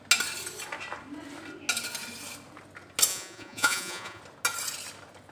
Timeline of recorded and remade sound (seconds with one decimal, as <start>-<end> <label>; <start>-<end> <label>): 0.0-3.1 recorded; 3.1-4.2 remade; 4.2-5.3 recorded